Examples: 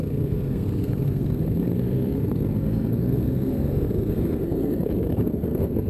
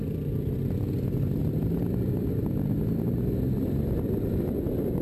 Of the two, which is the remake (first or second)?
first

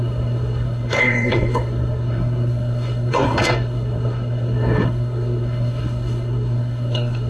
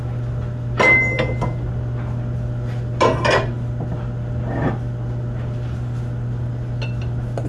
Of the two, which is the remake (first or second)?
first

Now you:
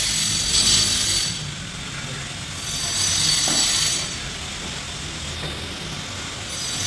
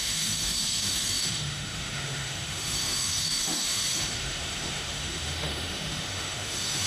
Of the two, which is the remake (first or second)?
second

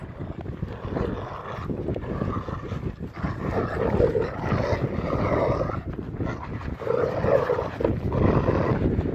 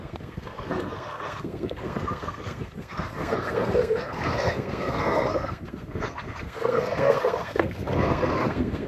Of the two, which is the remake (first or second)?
second